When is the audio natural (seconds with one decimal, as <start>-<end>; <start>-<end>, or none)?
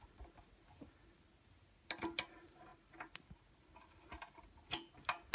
0.0-5.3